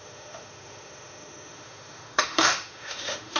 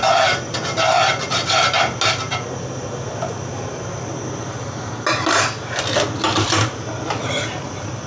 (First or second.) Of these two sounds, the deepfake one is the first